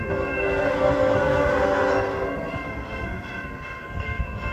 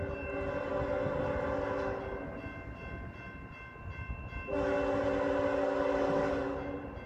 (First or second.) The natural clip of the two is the second